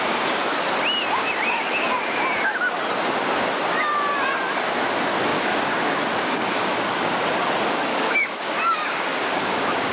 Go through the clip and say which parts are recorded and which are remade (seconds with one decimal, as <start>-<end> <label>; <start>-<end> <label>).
0.0-5.3 recorded; 5.3-7.5 remade; 7.5-7.9 recorded; 7.9-9.9 remade